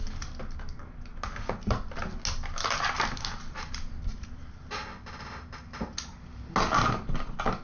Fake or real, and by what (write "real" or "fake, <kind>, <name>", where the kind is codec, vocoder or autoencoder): real